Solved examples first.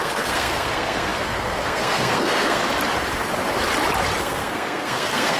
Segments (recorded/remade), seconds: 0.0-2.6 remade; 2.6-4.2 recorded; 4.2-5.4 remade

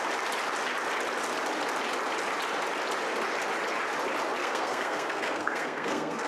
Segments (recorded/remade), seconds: 0.0-4.4 recorded; 4.4-6.3 remade

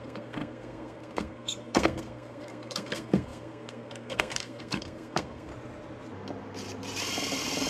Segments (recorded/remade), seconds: 0.0-5.5 remade; 5.5-7.7 recorded

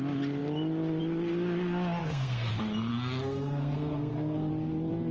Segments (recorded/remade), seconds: 0.0-2.0 recorded; 2.0-2.5 remade; 2.5-2.9 recorded; 2.9-4.5 remade; 4.5-5.1 recorded